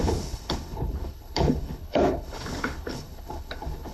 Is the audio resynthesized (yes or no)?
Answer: yes